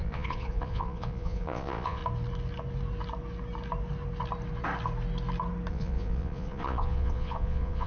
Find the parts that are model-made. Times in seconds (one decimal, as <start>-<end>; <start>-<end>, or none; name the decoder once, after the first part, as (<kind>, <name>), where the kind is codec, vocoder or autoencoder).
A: 0.0-2.0 (vocoder, Vocos); 5.7-7.9